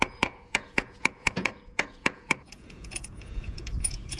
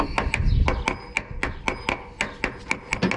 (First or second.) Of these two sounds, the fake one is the first